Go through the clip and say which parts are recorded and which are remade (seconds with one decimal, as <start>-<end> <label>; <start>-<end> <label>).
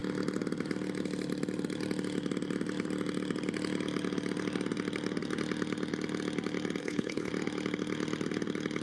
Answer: 0.0-6.8 recorded; 6.8-7.3 remade; 7.3-8.8 recorded